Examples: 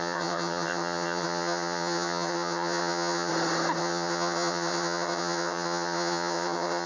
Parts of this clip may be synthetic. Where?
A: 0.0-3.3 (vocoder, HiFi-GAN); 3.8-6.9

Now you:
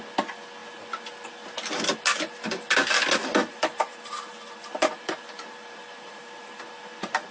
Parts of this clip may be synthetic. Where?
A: 3.4-7.3 (vocoder, BigVGAN v2)

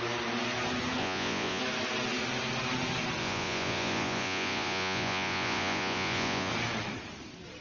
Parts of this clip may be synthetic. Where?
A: 1.0-1.6 (vocoder, Vocos); 3.2-6.5